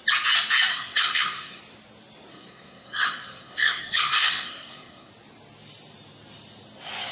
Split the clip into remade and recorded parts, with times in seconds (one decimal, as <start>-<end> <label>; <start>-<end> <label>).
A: 0.0-0.7 recorded; 0.7-1.6 remade; 1.6-2.3 recorded; 2.3-5.1 remade; 5.1-7.1 recorded